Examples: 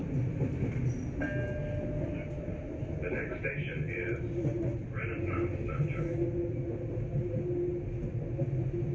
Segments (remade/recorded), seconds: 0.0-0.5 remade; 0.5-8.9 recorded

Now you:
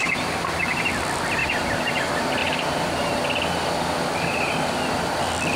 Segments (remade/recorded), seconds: 0.0-1.4 recorded; 1.4-2.0 remade; 2.0-2.4 recorded; 2.4-3.2 remade; 3.2-5.6 recorded

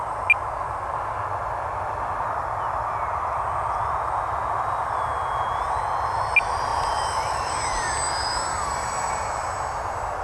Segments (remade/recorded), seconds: 0.0-6.7 recorded; 6.7-9.5 remade; 9.5-10.2 recorded

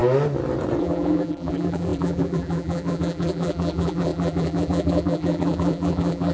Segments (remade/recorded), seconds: 0.0-0.8 recorded; 0.8-6.3 remade